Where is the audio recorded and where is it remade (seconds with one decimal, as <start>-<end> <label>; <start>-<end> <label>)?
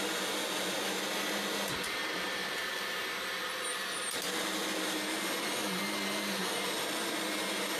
0.0-2.0 recorded; 2.0-3.2 remade; 3.2-7.8 recorded